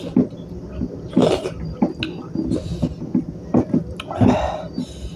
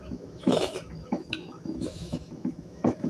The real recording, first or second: first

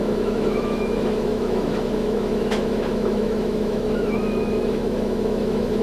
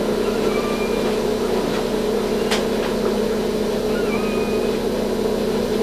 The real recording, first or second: second